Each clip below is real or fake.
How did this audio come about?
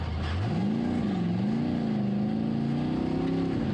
real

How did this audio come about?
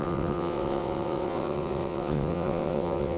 fake